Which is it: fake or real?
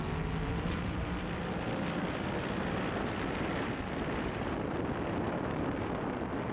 real